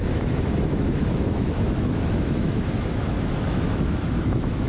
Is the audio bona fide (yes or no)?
no